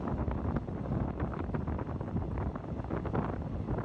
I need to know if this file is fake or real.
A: real